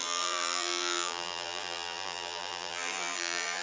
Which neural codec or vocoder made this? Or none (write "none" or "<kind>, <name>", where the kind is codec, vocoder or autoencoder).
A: vocoder, BigVGAN v2